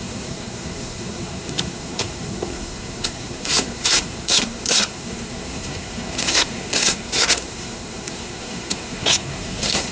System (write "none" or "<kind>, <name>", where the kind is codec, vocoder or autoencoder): codec, SNAC